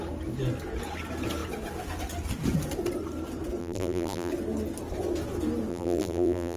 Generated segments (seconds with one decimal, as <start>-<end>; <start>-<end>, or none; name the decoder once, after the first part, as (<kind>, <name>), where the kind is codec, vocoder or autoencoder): 3.6-4.3 (vocoder, BigVGAN v2); 5.7-6.6